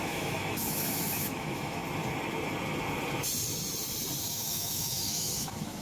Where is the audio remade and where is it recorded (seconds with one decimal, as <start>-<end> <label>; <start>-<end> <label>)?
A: 0.0-1.8 remade; 1.8-4.2 recorded; 4.2-5.8 remade